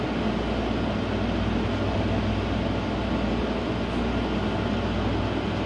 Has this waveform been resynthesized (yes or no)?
no